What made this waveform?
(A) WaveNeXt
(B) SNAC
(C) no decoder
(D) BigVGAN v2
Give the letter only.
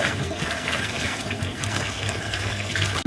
B